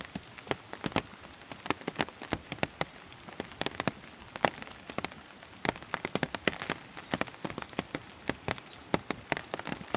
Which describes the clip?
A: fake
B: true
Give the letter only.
B